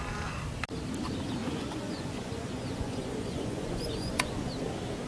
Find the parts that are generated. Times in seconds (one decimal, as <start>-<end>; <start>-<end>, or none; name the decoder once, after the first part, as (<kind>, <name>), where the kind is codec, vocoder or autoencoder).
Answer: 1.4-4.5 (vocoder, Vocos)